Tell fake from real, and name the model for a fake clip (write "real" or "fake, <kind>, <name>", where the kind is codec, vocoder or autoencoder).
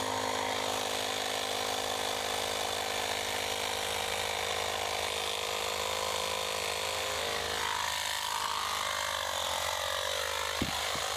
real